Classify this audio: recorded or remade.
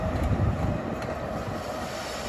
recorded